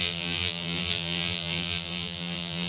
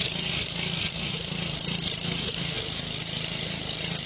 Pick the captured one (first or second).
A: second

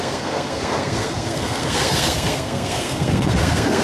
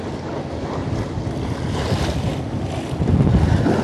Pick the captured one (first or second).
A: second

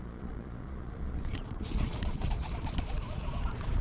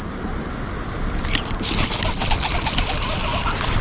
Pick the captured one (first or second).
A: second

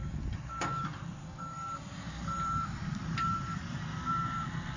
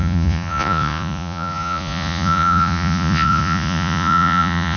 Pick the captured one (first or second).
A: first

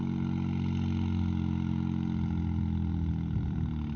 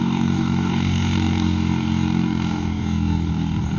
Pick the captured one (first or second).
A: first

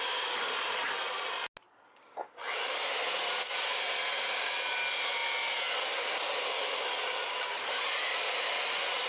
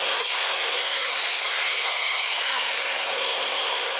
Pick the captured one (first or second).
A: first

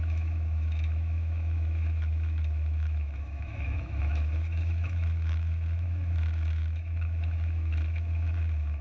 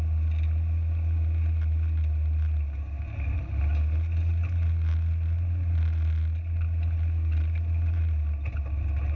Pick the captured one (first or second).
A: second